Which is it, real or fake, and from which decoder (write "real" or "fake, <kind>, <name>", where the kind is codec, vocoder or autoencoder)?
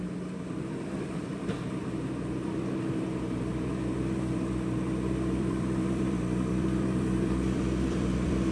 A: fake, vocoder, BigVGAN v2